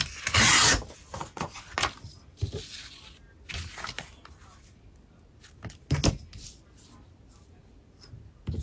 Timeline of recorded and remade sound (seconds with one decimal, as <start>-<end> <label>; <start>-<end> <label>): 0.0-1.2 recorded; 1.2-1.7 remade; 1.7-8.6 recorded